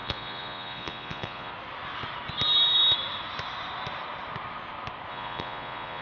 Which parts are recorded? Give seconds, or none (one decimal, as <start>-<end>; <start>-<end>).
1.5-5.1